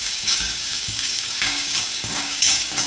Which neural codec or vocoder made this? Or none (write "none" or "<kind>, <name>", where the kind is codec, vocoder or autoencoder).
codec, DAC